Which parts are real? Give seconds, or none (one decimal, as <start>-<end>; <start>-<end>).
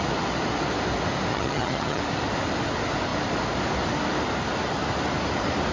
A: 0.0-1.3; 2.0-5.7